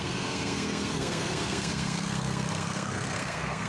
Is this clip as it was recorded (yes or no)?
no